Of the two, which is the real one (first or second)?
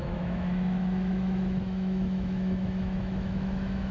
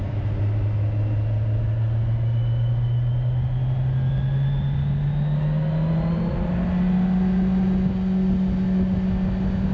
second